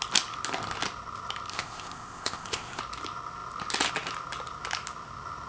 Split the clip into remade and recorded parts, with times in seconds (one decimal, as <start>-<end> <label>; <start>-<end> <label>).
0.0-1.5 recorded; 1.5-2.8 remade; 2.8-5.5 recorded